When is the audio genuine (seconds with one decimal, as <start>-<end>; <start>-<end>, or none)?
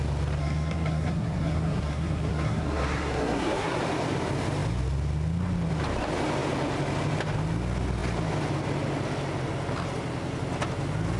0.0-0.4; 3.8-11.2